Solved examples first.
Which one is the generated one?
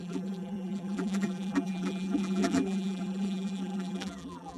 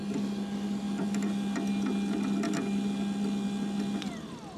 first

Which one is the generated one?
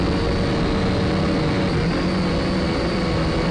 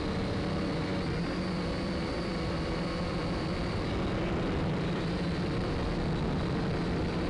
second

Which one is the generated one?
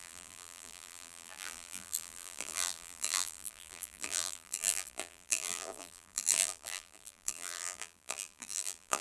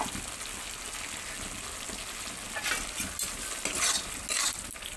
first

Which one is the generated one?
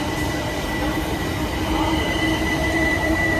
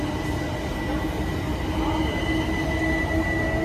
first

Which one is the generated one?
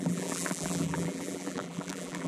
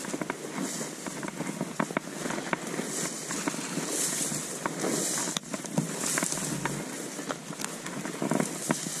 first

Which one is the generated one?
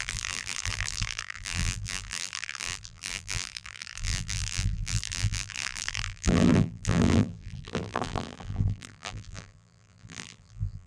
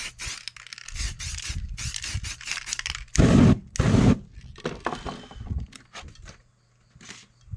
first